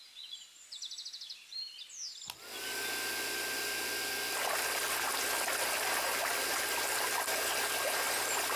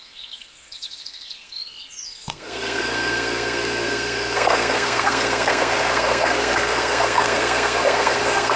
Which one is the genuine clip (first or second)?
first